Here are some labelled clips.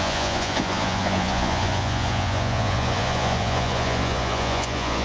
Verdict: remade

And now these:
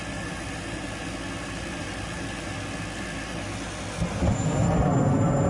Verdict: recorded